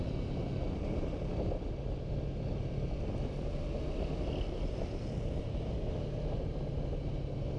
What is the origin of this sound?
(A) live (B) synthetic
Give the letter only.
A